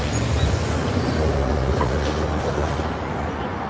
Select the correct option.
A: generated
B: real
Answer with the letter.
A